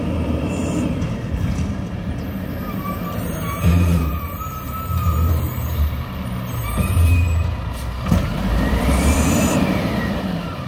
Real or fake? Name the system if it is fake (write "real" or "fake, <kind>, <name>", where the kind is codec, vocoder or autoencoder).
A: fake, vocoder, BigVGAN v2